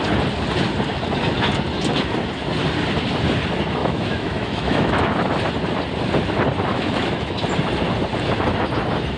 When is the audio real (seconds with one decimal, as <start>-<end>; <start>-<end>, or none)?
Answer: 0.0-3.8; 5.0-6.7; 7.4-9.2